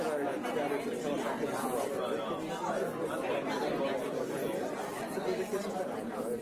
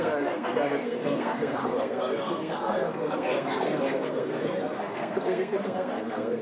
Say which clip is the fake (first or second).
second